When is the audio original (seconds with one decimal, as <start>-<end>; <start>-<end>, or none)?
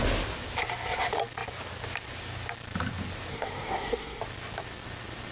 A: 0.0-3.3; 4.2-5.3